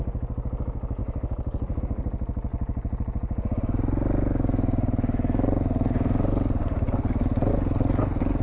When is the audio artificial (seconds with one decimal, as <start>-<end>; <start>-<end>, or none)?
1.0-1.8; 2.5-7.5